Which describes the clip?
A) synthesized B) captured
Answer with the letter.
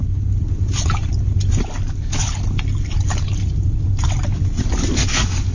B